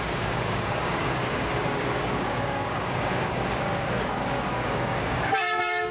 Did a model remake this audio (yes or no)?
yes